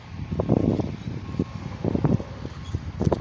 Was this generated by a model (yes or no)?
no